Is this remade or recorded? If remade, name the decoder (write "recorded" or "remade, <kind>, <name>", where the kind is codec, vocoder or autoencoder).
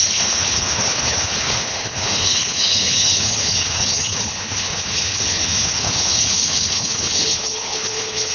remade, codec, HILCodec